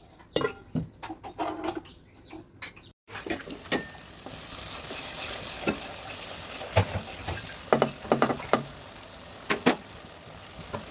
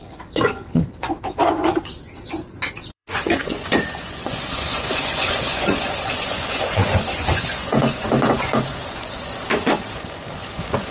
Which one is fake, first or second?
second